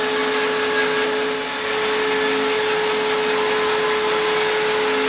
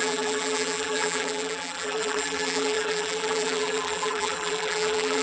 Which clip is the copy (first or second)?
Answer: second